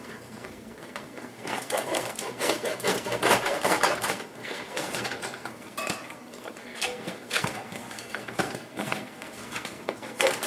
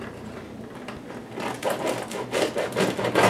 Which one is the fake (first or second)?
first